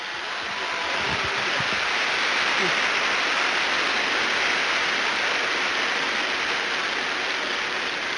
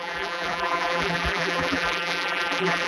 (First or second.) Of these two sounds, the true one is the first